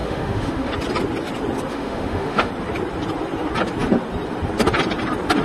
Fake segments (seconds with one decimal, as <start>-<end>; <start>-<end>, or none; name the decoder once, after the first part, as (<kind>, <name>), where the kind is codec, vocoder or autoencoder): 0.0-0.7 (autoencoder, DAC-VAE); 1.7-2.5